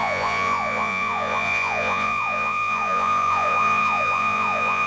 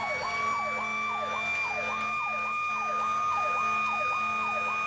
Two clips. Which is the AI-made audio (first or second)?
first